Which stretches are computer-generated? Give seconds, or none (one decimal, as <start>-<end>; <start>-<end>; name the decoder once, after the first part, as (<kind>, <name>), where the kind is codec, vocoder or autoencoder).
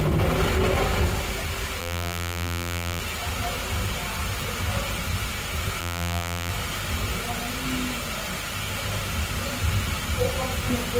1.8-3.0 (vocoder, BigVGAN v2); 5.8-6.5